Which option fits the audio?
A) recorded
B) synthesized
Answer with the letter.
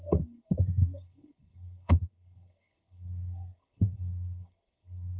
B